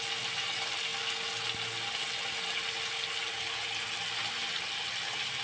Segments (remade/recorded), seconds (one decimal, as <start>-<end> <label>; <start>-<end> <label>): 0.0-5.4 recorded

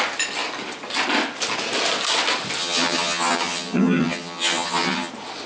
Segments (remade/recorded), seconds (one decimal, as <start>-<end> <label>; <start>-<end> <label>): 0.0-2.6 recorded; 2.6-5.1 remade; 5.1-5.5 recorded